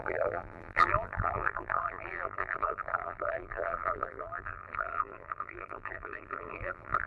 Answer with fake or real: fake